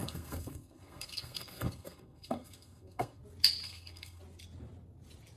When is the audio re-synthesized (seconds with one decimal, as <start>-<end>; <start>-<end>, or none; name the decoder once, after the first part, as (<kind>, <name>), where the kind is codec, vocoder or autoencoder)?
0.0-3.2 (codec, SNAC); 3.6-4.2